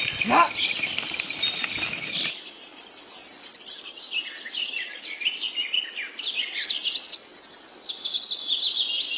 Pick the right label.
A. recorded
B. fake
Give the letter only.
A